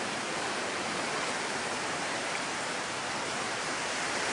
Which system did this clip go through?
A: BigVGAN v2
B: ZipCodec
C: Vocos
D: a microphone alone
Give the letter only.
A